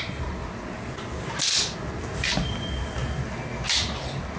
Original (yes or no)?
yes